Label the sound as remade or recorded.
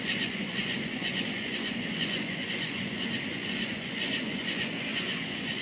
remade